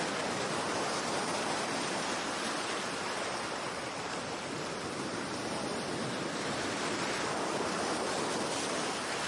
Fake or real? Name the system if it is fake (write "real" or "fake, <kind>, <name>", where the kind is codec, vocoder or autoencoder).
real